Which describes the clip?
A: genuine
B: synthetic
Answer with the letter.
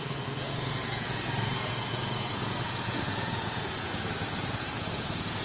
B